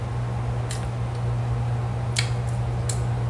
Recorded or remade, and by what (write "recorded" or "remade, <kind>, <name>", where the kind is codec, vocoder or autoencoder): recorded